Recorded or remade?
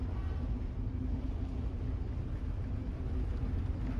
recorded